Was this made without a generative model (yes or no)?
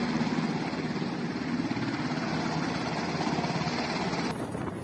yes